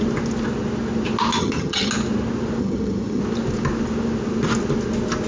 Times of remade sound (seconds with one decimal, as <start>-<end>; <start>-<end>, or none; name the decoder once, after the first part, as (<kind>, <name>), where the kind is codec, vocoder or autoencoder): 1.4-1.9 (vocoder, HiFi-GAN); 2.6-3.2